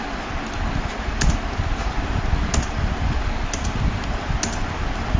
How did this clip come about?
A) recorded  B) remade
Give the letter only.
A